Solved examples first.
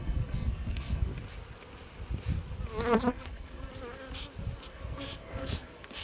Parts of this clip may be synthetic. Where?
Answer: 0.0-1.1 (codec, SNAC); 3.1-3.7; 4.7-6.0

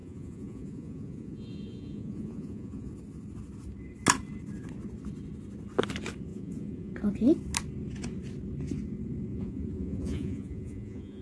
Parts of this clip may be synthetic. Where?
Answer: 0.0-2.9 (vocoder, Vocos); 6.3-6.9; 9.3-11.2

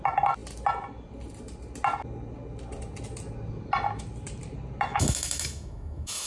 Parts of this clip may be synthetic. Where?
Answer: 4.9-6.3 (autoencoder, DAC-VAE)

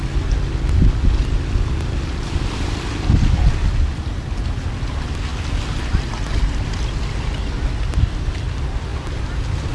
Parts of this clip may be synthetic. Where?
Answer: none

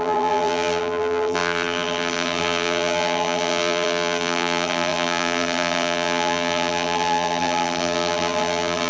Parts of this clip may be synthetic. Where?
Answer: 0.0-8.9 (vocoder, BigVGAN v2)